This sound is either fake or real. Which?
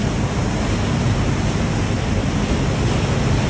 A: real